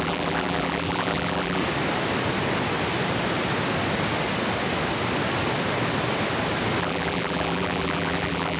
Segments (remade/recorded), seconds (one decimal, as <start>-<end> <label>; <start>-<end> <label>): 0.0-1.6 remade; 1.6-6.8 recorded; 6.8-8.6 remade